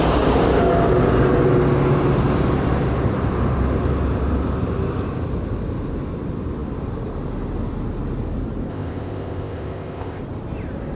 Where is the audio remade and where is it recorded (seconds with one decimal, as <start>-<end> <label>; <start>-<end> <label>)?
0.0-8.7 recorded; 8.7-10.2 remade; 10.2-11.0 recorded